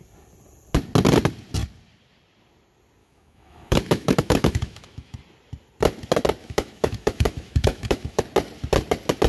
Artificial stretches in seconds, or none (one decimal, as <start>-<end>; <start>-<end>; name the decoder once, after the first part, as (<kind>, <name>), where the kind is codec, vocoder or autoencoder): 3.0-5.2 (autoencoder, DAC-VAE); 6.4-8.2